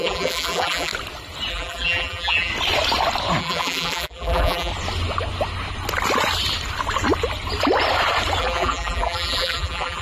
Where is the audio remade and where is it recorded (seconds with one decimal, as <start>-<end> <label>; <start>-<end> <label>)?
0.0-0.9 remade; 0.9-1.5 recorded; 1.5-2.5 remade; 2.5-3.4 recorded; 3.4-4.7 remade; 4.7-8.4 recorded; 8.4-10.0 remade